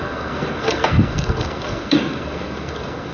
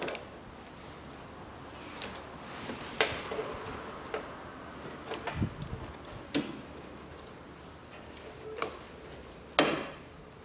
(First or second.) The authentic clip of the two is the second